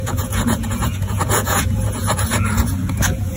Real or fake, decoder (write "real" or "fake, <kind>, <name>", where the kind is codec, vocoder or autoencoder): fake, vocoder, Vocos